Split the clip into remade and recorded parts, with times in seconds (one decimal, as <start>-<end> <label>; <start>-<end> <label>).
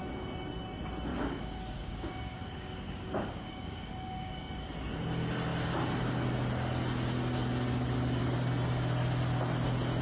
0.0-1.1 recorded; 1.1-4.4 remade; 4.4-10.0 recorded